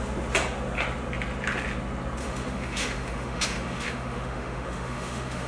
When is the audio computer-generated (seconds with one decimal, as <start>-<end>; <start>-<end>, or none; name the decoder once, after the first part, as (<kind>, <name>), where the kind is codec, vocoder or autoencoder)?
2.2-5.5 (autoencoder, DAC-VAE)